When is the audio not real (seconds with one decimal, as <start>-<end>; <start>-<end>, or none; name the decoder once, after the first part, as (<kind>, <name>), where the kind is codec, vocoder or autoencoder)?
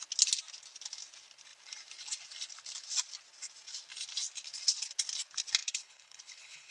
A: 5.6-6.7 (codec, HILCodec)